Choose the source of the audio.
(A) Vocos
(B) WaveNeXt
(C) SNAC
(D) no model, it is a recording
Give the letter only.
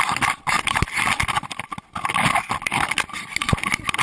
D